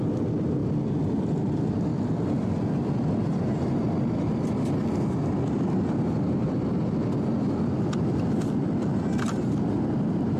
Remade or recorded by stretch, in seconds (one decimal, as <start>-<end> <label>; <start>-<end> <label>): 0.0-10.4 recorded